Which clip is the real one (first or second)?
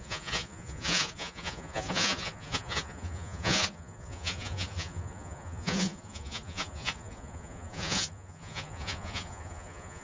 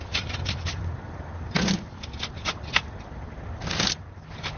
second